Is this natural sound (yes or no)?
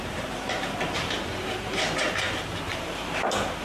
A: no